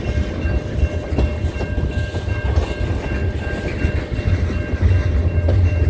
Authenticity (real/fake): real